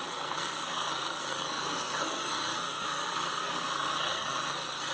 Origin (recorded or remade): remade